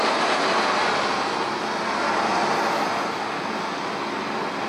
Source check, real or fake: real